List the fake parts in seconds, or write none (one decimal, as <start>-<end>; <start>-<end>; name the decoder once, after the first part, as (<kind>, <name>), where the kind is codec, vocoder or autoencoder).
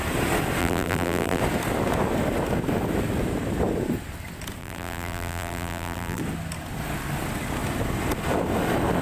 0.6-1.4 (vocoder, BigVGAN v2); 4.6-6.2